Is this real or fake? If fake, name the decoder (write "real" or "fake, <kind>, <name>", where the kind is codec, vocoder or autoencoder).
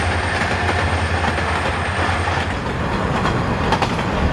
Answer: real